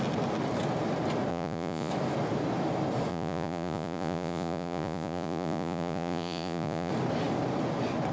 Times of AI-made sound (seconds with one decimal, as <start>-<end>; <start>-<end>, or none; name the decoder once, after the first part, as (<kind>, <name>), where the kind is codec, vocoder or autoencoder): 1.3-1.9 (vocoder, Vocos); 3.1-6.9